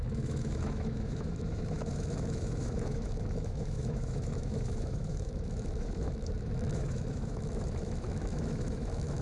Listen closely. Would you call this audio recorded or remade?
remade